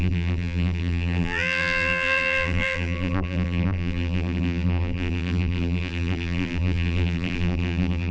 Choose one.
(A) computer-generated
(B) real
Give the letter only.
A